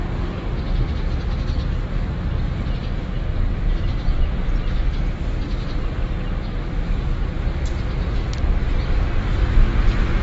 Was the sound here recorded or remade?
recorded